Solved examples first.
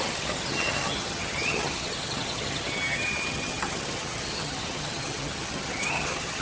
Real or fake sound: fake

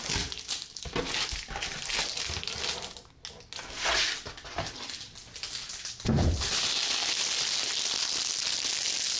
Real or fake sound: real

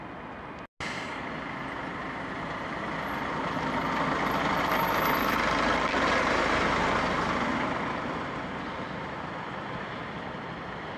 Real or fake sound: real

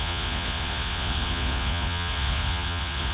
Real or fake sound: fake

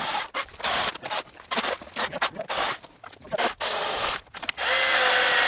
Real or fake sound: real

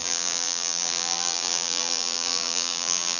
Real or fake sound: fake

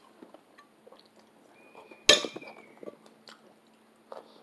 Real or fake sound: real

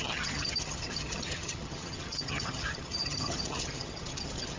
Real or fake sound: fake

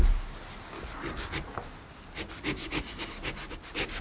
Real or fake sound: real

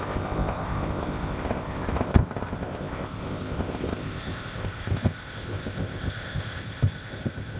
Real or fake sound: fake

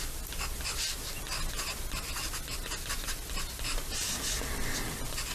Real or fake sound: real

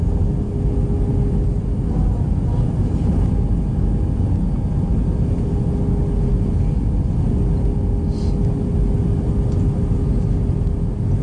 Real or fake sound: real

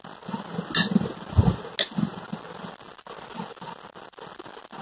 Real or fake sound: real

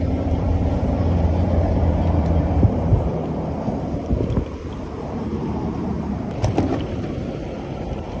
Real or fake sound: fake